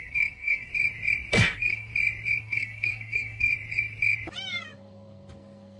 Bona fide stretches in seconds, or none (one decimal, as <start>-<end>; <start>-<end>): 0.7-1.3; 1.9-2.4; 3.5-4.5